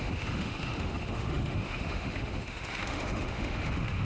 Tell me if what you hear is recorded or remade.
remade